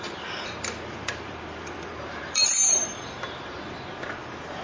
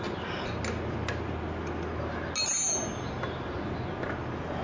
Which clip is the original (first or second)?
second